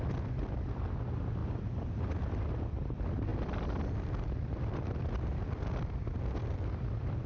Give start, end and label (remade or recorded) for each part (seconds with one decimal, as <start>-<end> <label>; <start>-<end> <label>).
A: 0.0-1.4 recorded; 1.4-2.6 remade; 2.6-3.3 recorded; 3.3-6.4 remade; 6.4-7.3 recorded